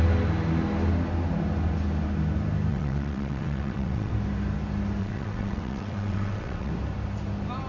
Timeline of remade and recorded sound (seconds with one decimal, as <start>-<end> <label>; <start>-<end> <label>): 0.0-2.7 recorded; 2.7-4.1 remade; 4.1-5.0 recorded; 5.0-6.7 remade; 6.7-7.7 recorded